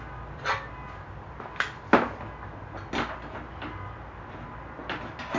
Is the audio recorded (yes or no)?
yes